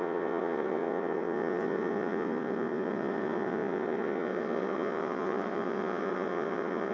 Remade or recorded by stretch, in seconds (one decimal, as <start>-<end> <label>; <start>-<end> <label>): 0.0-6.9 remade